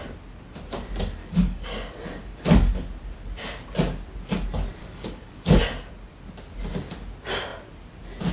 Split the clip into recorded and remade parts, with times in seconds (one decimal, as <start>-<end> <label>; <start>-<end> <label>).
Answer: 0.0-1.2 recorded; 1.2-2.7 remade; 2.7-4.8 recorded; 4.8-5.6 remade; 5.6-8.3 recorded